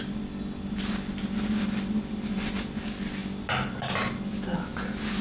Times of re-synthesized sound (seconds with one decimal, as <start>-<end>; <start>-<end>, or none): none